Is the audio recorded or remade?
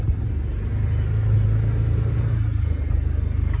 recorded